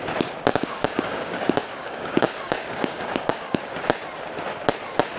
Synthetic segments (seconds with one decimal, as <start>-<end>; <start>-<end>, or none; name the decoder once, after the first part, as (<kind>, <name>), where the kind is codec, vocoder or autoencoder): 0.5-3.6 (codec, DAC)